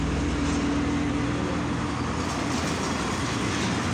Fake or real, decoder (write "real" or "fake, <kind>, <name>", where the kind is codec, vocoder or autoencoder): real